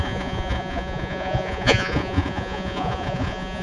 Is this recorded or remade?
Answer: remade